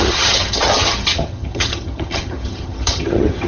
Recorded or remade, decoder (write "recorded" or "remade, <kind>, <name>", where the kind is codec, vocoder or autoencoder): remade, vocoder, HiFi-GAN